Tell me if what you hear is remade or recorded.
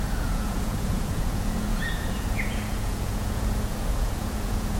remade